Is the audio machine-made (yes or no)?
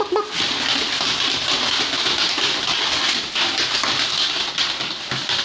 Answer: no